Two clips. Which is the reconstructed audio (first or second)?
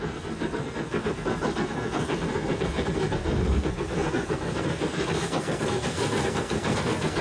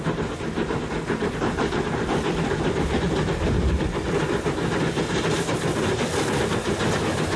first